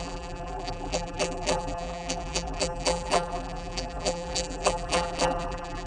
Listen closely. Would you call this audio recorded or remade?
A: remade